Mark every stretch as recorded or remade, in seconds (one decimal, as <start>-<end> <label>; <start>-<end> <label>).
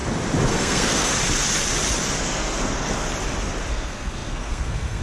0.0-0.5 recorded; 0.5-1.1 remade; 1.1-2.2 recorded; 2.2-3.0 remade; 3.0-3.7 recorded; 3.7-5.0 remade